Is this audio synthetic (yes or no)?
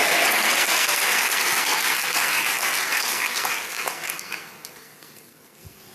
yes